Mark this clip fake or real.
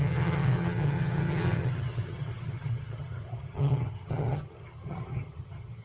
fake